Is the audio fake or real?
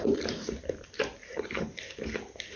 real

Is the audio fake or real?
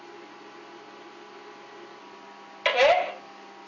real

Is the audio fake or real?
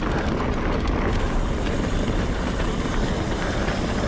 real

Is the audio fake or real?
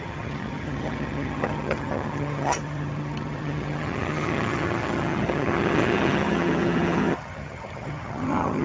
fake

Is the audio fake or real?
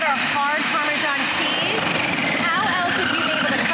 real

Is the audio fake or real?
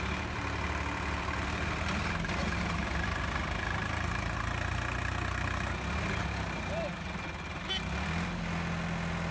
real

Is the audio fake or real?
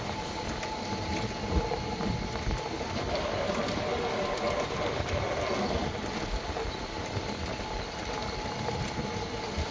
real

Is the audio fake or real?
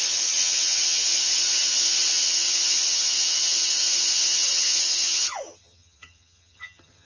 fake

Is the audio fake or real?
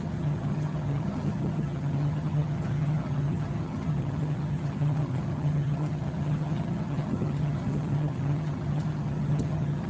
fake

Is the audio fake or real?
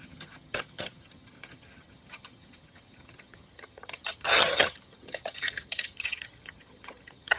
fake